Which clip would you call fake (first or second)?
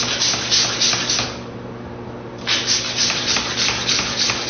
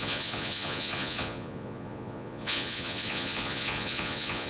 second